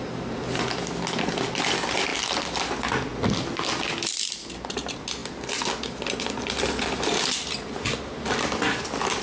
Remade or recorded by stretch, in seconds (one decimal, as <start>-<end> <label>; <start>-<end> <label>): 0.0-9.2 recorded